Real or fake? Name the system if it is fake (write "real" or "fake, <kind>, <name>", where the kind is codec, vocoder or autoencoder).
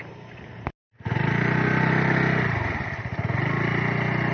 real